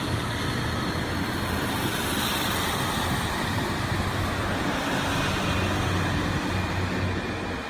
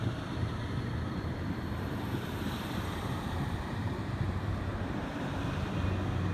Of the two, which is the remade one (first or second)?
second